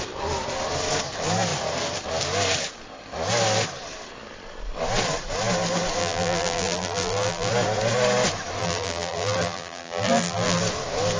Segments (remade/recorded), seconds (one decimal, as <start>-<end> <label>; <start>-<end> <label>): 0.0-6.0 recorded; 6.0-7.5 remade; 7.5-8.6 recorded; 8.6-10.6 remade; 10.6-11.2 recorded